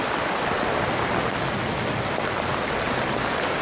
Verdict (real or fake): real